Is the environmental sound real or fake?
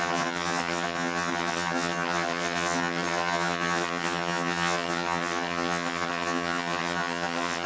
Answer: fake